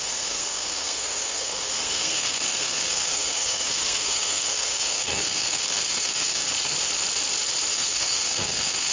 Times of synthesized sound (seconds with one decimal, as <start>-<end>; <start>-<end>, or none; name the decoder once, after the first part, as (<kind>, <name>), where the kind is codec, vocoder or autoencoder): 0.0-6.4 (codec, SNAC); 7.7-8.9